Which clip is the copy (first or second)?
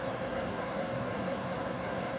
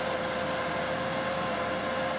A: first